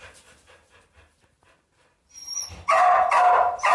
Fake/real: real